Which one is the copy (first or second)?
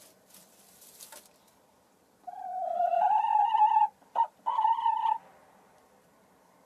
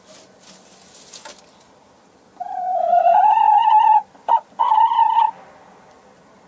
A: first